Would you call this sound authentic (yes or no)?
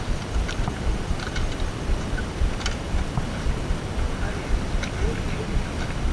yes